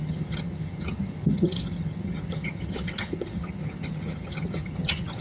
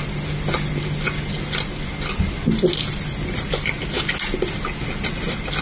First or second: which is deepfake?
first